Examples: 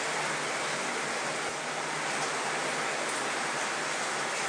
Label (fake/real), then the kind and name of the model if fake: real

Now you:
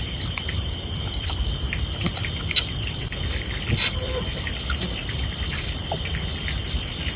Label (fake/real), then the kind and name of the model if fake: real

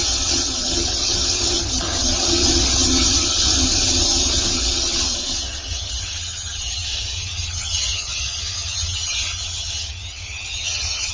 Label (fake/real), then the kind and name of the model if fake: fake, vocoder, HiFi-GAN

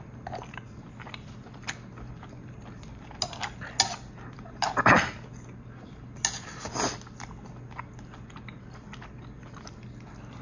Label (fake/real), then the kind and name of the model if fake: real